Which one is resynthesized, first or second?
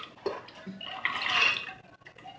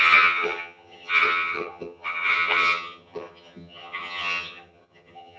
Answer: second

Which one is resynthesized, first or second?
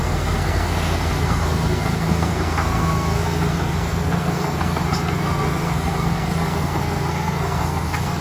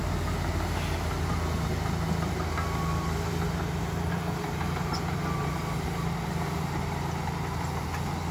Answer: first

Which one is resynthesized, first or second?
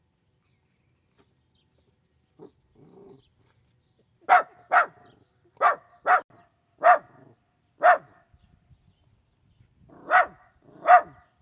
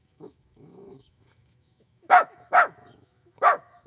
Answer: second